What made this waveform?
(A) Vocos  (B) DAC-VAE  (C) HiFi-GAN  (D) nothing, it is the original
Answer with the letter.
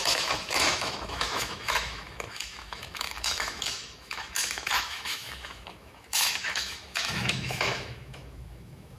B